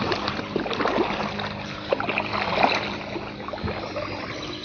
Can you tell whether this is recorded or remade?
recorded